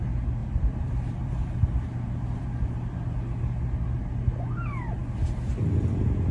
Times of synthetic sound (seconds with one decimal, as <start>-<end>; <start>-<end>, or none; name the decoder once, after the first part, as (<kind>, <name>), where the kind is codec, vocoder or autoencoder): 0.4-3.4 (vocoder, BigVGAN v2)